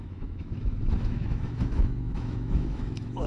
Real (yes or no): no